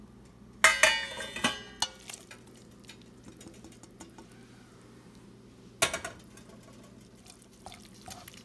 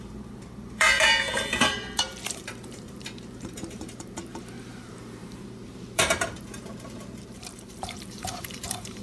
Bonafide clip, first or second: first